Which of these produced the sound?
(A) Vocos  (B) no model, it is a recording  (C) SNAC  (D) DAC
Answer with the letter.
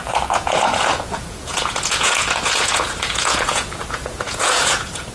A